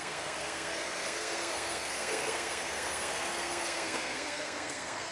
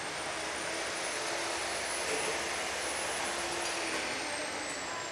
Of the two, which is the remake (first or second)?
first